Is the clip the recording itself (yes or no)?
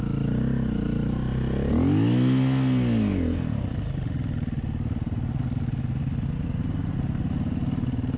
yes